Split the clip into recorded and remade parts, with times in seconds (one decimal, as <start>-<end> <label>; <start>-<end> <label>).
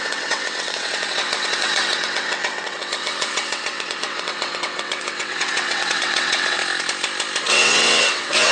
0.0-6.6 remade; 6.6-7.4 recorded; 7.4-8.5 remade